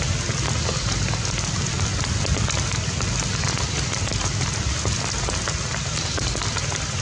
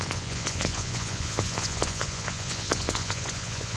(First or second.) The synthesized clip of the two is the second